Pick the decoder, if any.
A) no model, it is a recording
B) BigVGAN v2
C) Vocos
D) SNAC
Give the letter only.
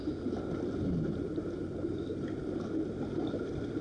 A